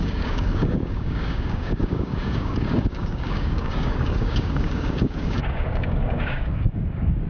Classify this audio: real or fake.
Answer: fake